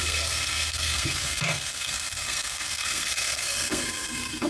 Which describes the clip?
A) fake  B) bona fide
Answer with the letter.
A